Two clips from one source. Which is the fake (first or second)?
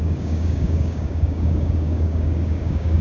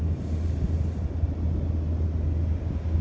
first